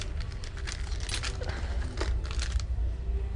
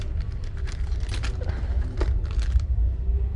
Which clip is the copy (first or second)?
second